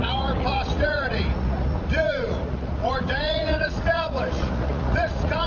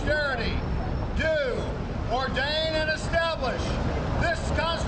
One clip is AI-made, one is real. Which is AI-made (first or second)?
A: first